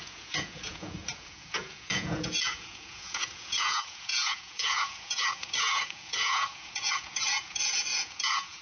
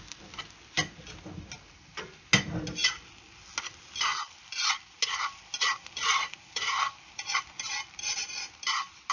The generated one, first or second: first